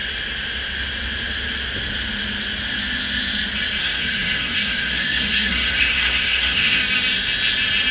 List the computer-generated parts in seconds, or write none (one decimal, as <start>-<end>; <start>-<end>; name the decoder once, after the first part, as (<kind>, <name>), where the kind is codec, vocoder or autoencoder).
3.8-6.8 (codec, SNAC)